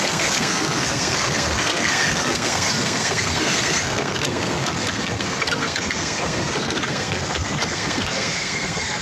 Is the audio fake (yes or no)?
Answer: yes